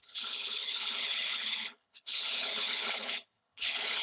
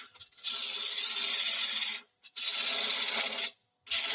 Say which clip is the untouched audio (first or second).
second